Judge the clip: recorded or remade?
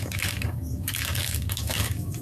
remade